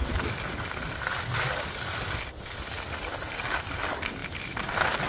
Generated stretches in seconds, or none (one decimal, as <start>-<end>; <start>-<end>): none